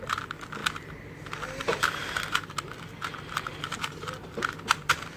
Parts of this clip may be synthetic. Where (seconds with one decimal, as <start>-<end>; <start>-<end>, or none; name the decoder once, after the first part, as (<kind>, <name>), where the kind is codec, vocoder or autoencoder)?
0.0-0.6 (vocoder, BigVGAN v2); 1.2-1.7; 4.8-5.2